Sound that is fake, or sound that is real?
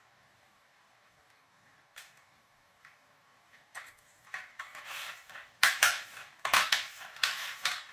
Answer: fake